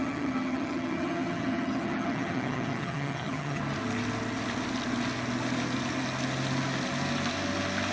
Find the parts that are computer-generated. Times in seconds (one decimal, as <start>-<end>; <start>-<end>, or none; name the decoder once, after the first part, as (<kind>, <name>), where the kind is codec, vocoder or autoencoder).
0.0-3.6 (vocoder, HiFi-GAN)